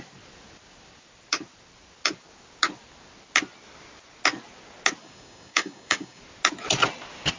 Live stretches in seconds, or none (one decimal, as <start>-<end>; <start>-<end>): 0.0-5.0; 6.2-7.4

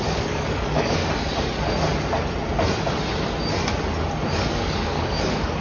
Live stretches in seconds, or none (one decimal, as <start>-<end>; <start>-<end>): 1.0-4.3